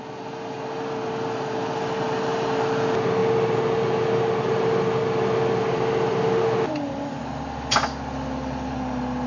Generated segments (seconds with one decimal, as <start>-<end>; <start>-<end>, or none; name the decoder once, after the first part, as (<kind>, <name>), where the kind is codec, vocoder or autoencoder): none